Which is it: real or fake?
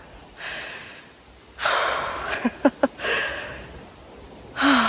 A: real